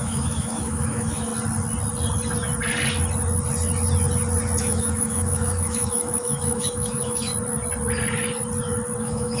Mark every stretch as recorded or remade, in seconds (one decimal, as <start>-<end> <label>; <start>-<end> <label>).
0.0-1.3 remade; 1.3-4.6 recorded; 4.6-7.3 remade; 7.3-9.0 recorded; 9.0-9.4 remade